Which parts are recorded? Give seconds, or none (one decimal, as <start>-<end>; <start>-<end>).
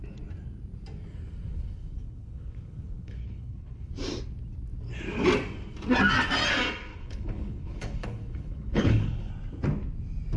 0.0-1.5; 3.9-6.9; 9.3-10.4